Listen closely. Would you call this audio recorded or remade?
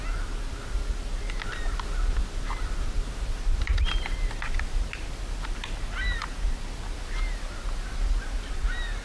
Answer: recorded